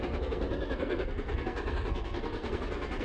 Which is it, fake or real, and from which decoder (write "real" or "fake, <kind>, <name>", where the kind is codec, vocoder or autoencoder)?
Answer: fake, codec, SNAC